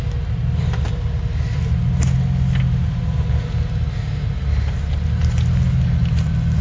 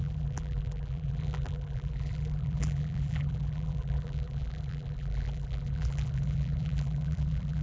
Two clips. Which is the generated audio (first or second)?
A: second